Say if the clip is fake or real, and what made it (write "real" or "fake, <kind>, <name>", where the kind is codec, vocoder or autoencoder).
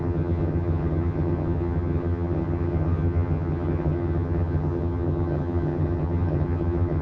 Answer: fake, vocoder, HiFi-GAN